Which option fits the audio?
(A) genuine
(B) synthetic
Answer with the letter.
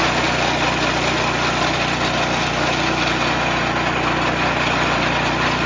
A